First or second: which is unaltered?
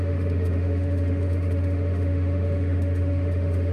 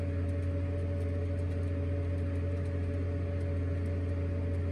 second